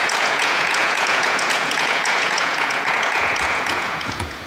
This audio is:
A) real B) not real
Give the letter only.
B